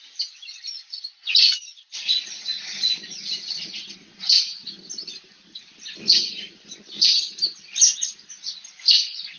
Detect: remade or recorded recorded